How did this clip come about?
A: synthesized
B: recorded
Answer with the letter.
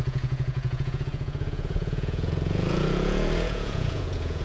A